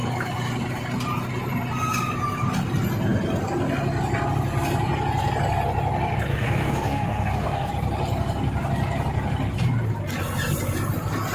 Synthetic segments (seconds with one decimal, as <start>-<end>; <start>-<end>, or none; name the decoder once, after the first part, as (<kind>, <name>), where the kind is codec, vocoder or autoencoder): 6.3-7.7 (codec, DAC)